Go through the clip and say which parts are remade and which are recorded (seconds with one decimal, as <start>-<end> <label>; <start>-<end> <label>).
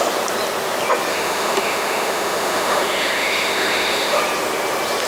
0.0-1.1 recorded; 1.1-4.2 remade; 4.2-5.1 recorded